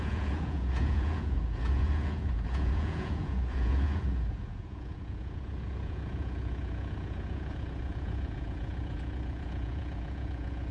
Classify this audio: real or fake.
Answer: fake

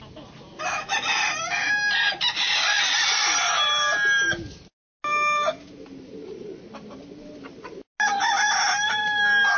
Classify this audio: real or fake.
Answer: real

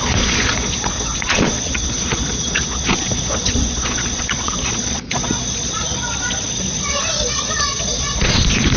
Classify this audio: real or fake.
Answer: fake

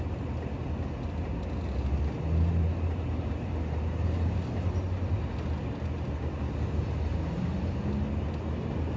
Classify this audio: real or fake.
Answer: real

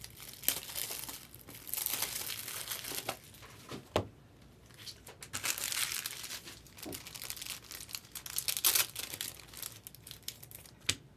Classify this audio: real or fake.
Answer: real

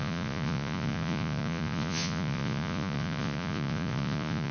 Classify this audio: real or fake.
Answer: fake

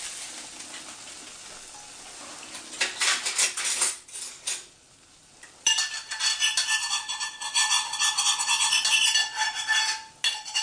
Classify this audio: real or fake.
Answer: real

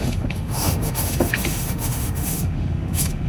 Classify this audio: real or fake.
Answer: fake